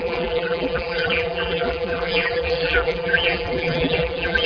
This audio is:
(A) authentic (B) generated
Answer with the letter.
B